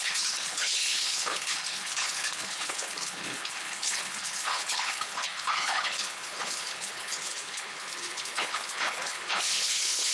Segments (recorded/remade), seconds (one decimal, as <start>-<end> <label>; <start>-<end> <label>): 0.0-10.1 remade